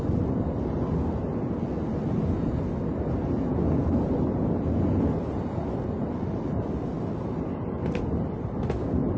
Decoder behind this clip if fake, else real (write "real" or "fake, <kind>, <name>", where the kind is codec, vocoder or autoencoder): real